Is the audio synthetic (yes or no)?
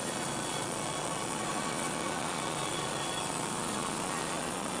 yes